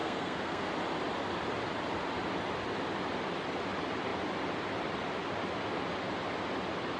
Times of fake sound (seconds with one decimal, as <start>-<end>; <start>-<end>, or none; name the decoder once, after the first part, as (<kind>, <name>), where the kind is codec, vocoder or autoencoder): 0.0-0.7 (codec, SNAC)